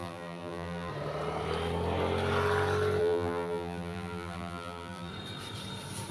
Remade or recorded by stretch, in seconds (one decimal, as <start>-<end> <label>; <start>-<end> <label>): 0.0-0.9 remade; 0.9-3.0 recorded; 3.0-5.1 remade; 5.1-6.1 recorded